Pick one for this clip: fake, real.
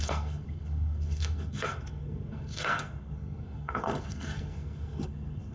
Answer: fake